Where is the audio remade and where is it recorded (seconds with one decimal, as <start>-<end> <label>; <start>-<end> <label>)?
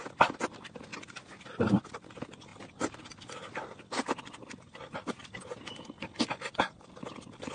0.0-7.5 recorded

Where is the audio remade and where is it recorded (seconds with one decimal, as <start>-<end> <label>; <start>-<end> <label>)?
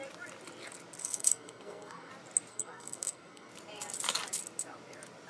0.0-1.0 recorded; 1.0-2.1 remade; 2.1-2.5 recorded; 2.5-3.5 remade; 3.5-5.3 recorded